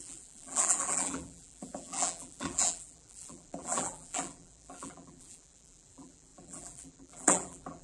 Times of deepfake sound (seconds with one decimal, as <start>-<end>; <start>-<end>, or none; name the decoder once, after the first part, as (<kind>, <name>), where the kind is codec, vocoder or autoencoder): 0.0-7.8 (vocoder, BigVGAN v2)